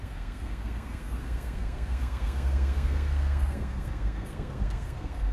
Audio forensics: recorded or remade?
remade